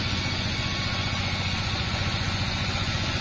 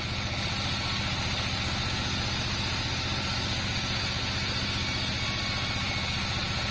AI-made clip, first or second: first